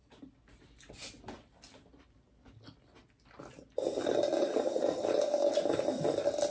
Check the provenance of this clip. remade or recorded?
recorded